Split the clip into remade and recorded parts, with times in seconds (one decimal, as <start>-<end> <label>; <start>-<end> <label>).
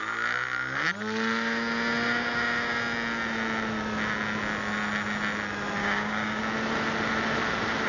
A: 0.0-5.8 recorded; 5.8-6.4 remade; 6.4-7.9 recorded